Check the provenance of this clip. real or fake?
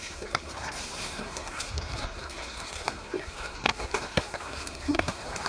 fake